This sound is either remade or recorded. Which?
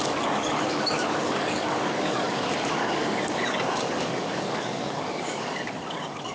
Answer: remade